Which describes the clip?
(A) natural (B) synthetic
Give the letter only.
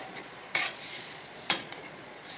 B